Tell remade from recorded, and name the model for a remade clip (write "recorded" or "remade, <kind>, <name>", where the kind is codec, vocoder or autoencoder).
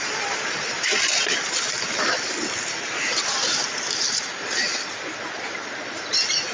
recorded